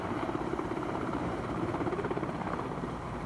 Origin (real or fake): fake